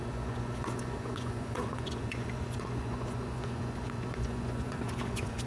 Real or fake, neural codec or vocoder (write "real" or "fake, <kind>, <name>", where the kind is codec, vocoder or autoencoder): fake, vocoder, Vocos